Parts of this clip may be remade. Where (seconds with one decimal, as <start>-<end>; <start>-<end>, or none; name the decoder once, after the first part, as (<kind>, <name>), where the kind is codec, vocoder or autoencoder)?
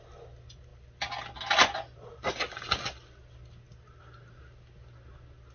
none